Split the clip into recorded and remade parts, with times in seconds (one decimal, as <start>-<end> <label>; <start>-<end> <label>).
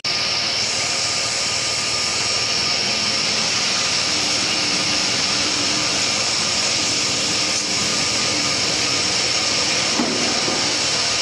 0.0-2.1 recorded; 2.1-2.9 remade; 2.9-5.0 recorded; 5.0-6.8 remade; 6.8-7.9 recorded; 7.9-10.0 remade; 10.0-11.2 recorded